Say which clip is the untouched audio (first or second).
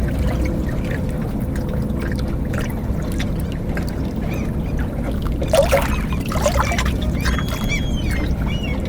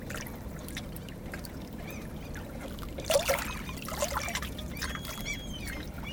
first